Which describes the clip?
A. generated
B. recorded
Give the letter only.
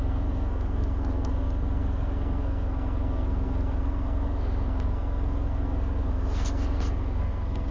A